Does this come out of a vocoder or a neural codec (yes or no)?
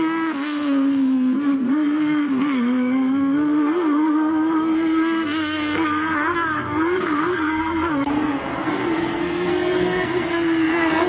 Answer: yes